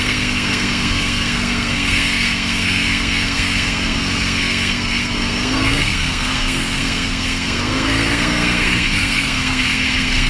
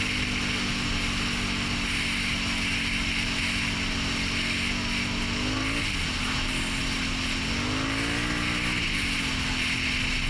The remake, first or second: first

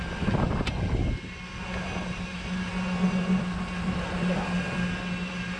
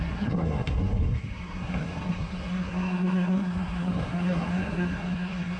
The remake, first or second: second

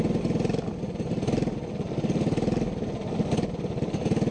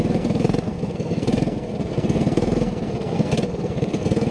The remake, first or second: second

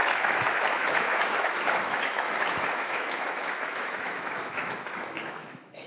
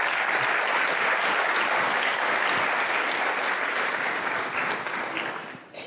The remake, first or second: first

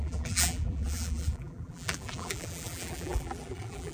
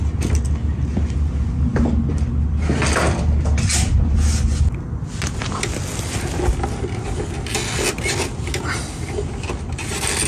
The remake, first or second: first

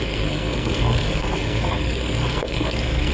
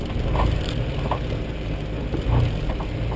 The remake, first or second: first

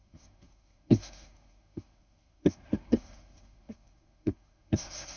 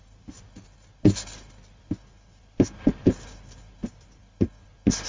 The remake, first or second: first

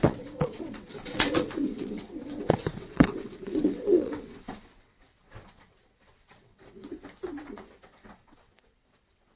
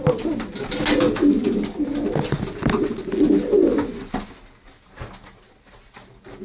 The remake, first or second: first